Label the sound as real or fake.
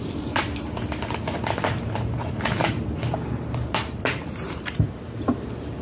fake